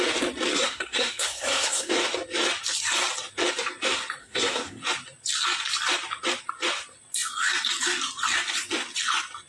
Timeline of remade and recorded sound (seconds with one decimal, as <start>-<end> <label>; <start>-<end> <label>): 0.0-0.5 recorded; 0.5-1.9 remade; 1.9-4.2 recorded; 4.2-4.8 remade; 4.8-9.5 recorded